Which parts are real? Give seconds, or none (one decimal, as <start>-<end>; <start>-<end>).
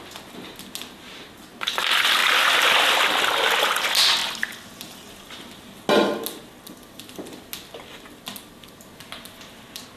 0.0-10.0